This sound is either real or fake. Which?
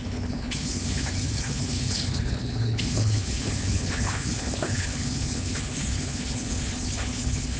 fake